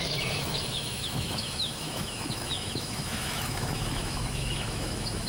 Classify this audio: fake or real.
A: fake